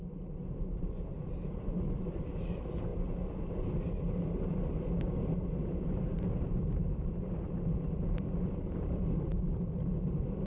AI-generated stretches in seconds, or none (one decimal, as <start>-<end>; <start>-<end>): 1.1-1.9; 5.6-9.9